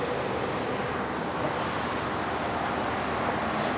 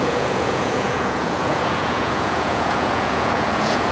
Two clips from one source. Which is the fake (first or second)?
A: second